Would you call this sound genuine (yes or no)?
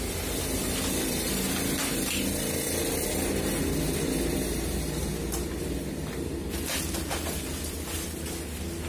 yes